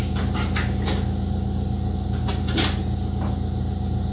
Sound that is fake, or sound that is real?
real